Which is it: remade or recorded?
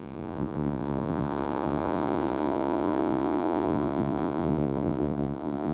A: remade